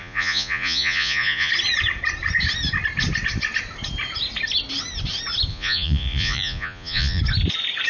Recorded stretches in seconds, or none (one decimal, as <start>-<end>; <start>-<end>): 1.5-5.5; 7.2-7.9